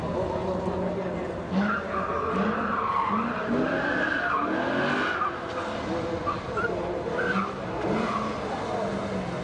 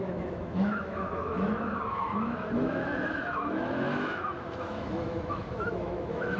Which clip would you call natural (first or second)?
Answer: first